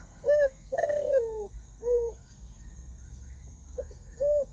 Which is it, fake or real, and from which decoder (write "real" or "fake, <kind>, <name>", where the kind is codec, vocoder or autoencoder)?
fake, codec, SNAC